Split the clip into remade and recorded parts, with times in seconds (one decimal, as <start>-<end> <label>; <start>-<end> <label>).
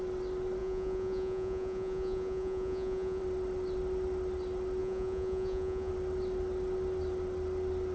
0.0-0.6 recorded; 0.6-3.2 remade; 3.2-4.8 recorded; 4.8-5.9 remade; 5.9-7.9 recorded